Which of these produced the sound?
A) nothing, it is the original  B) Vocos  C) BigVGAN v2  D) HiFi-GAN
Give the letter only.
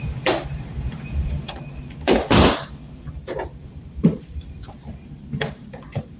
C